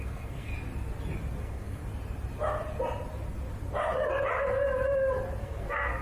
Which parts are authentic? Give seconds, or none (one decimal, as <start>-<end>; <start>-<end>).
0.5-1.4; 1.8-5.4